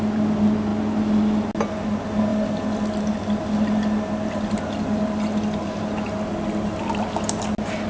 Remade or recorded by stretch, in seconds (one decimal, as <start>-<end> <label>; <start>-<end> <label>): 0.0-7.9 recorded